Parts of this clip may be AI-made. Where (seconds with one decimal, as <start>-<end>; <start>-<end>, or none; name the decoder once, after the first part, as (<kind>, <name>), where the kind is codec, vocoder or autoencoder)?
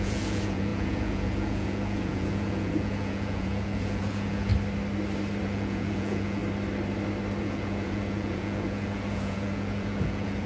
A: 0.0-4.5 (vocoder, Vocos); 5.4-6.4; 7.4-10.5